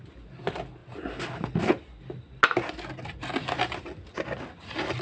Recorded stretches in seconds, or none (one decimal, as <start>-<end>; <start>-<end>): 0.0-5.0